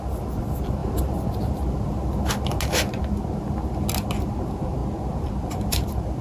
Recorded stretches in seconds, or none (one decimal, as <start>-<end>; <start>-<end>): 0.0-6.2